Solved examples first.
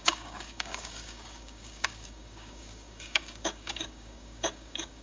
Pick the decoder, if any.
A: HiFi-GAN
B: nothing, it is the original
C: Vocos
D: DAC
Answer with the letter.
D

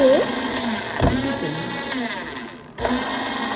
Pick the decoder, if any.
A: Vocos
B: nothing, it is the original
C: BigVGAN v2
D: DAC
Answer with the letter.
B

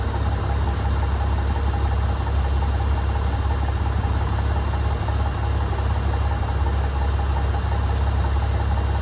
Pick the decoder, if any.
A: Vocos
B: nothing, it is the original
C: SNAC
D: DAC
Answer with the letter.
B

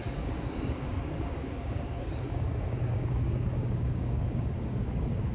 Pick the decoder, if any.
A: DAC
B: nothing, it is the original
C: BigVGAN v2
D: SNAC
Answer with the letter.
A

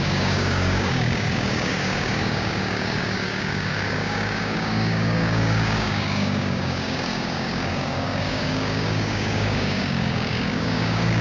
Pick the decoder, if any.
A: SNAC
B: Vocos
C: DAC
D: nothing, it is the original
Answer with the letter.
C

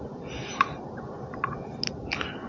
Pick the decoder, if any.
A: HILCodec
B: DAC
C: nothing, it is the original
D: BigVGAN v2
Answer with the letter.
C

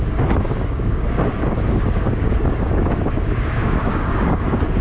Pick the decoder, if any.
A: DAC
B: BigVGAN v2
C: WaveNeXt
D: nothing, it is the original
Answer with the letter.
A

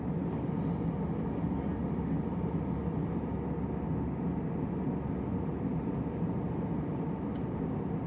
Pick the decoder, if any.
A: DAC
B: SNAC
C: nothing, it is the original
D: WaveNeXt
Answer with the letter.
C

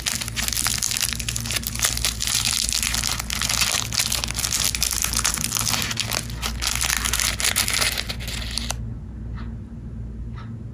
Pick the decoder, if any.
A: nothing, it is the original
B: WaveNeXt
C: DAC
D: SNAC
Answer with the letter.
A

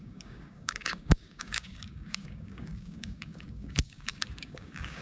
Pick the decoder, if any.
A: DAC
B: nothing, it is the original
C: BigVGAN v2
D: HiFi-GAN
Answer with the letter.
A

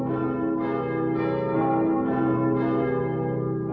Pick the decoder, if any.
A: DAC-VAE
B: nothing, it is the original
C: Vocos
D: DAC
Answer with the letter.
B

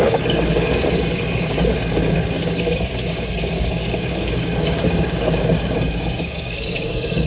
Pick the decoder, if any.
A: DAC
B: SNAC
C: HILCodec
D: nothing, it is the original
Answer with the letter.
A